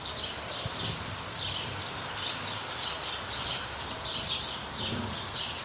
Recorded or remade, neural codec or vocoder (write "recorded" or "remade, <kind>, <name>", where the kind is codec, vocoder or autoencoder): recorded